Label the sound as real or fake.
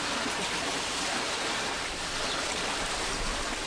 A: real